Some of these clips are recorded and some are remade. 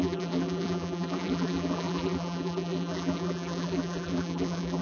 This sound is remade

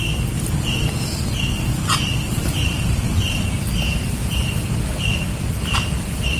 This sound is remade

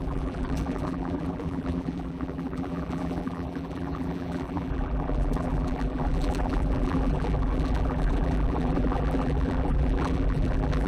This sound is remade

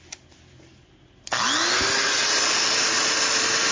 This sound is recorded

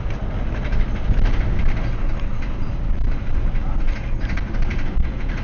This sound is recorded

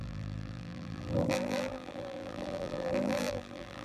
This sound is remade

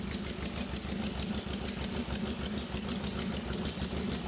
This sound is recorded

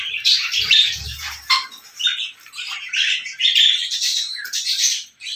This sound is remade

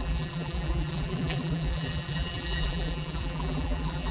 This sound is remade